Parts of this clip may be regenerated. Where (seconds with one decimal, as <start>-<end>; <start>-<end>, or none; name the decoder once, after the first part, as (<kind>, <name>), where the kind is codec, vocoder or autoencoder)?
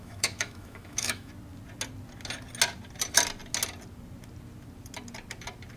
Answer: 0.0-1.3 (autoencoder, DAC-VAE)